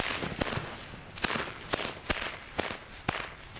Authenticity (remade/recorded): recorded